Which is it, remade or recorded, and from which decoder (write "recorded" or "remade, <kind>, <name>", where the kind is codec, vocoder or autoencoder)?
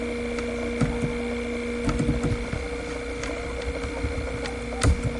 recorded